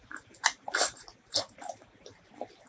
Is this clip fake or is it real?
fake